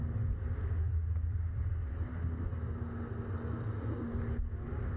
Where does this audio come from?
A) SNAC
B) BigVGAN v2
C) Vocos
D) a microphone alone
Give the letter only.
D